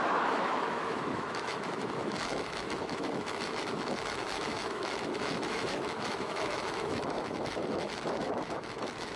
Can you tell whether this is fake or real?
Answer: fake